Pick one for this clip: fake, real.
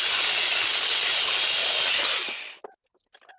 real